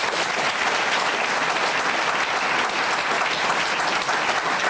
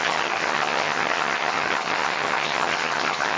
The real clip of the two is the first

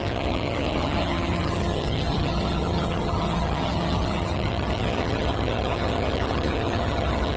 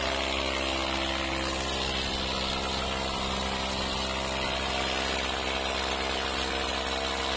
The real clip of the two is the second